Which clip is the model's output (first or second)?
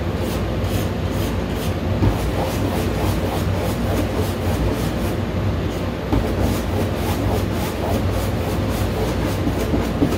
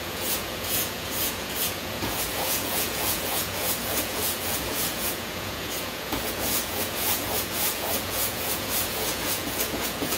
second